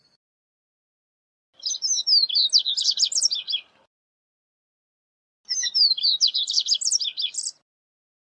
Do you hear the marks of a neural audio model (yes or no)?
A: no